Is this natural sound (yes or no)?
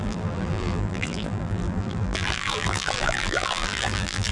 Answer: no